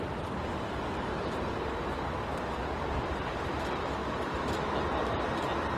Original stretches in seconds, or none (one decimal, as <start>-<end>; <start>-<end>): 0.0-4.0; 4.6-5.8